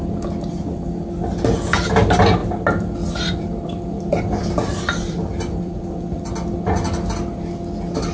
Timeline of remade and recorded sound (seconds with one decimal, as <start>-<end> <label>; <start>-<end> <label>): 0.0-2.4 recorded; 2.4-6.3 remade; 6.3-8.1 recorded